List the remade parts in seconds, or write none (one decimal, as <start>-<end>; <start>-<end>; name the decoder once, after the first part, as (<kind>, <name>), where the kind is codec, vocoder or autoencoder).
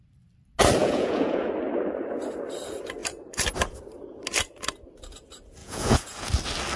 0.8-1.5 (vocoder, Vocos); 5.6-6.3